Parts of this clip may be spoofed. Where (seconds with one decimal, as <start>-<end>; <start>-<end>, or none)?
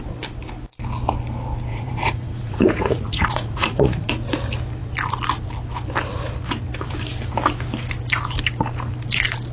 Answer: 1.7-4.1